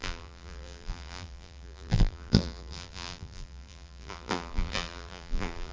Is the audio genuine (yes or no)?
no